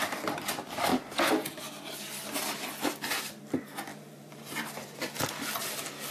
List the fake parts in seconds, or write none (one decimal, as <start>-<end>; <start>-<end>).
3.9-5.2